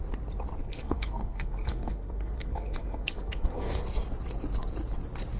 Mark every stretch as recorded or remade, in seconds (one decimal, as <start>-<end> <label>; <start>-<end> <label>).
0.0-0.6 recorded; 0.6-3.8 remade; 3.8-5.4 recorded